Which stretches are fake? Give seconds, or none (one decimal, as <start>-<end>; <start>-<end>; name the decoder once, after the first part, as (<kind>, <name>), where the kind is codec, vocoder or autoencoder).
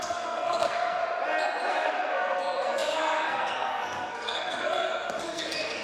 0.0-1.0 (codec, SNAC); 1.7-5.8